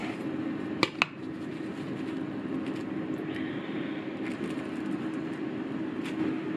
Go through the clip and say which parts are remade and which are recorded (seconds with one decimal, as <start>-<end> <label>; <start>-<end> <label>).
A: 0.0-6.6 recorded